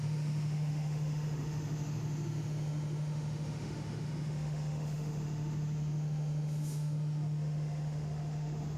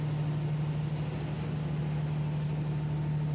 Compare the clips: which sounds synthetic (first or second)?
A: first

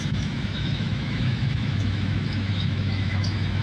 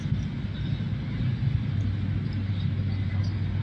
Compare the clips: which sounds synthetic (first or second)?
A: first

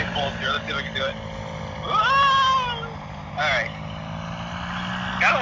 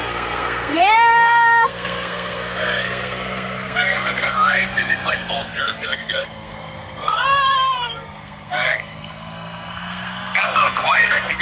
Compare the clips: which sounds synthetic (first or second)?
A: second